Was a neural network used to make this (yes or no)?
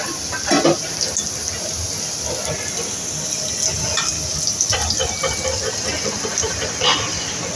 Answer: no